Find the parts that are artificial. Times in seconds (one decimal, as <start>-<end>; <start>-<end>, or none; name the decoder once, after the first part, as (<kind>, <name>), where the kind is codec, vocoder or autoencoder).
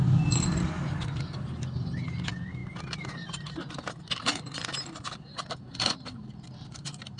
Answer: none